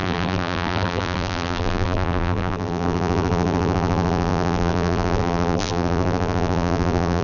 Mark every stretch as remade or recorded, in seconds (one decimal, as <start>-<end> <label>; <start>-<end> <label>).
0.0-7.2 remade